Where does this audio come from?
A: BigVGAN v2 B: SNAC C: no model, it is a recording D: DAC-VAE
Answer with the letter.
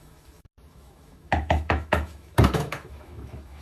D